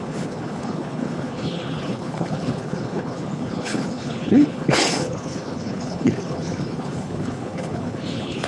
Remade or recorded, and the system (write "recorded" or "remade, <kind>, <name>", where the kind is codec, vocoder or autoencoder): remade, codec, HILCodec